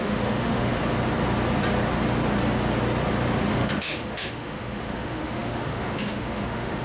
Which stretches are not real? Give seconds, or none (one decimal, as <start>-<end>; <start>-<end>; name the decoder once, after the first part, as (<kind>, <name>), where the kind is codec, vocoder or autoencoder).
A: 0.0-0.8 (autoencoder, DAC-VAE); 3.5-6.8